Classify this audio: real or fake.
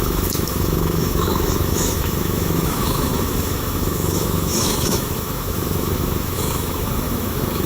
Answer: fake